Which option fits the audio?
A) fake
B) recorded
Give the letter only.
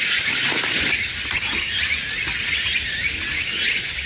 B